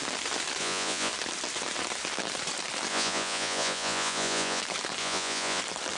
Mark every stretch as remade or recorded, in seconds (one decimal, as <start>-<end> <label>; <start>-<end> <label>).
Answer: 0.0-0.6 recorded; 0.6-1.1 remade; 1.1-2.9 recorded; 2.9-4.6 remade; 4.6-5.0 recorded; 5.0-5.6 remade; 5.6-6.0 recorded